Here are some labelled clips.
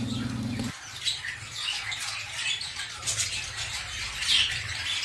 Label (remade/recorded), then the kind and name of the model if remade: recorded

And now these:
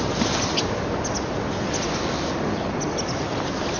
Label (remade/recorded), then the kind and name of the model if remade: recorded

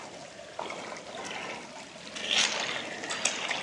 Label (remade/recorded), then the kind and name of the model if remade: recorded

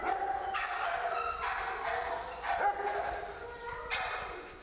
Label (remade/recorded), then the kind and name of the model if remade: recorded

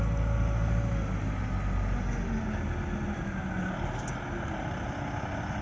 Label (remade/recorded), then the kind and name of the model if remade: recorded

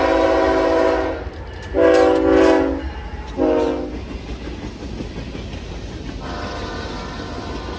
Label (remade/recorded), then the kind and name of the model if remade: recorded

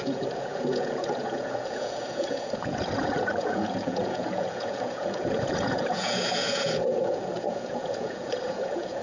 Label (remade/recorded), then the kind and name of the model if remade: remade, vocoder, Vocos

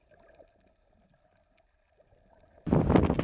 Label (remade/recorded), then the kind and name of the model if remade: recorded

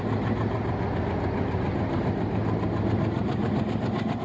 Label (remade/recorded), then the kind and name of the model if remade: recorded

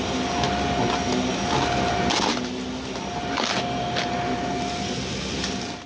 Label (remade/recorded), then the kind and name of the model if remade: recorded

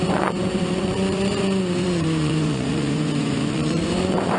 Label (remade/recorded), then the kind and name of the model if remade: remade, vocoder, Vocos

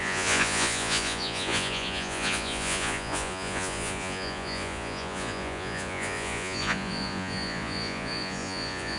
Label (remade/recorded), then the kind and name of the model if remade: remade, vocoder, Vocos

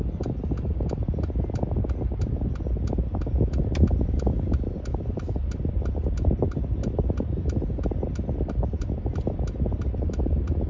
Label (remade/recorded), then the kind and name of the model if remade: recorded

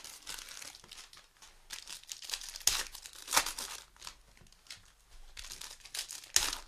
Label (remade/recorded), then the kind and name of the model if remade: recorded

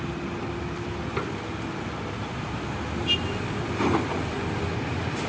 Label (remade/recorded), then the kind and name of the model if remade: recorded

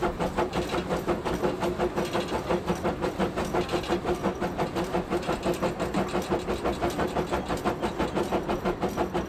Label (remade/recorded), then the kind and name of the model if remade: recorded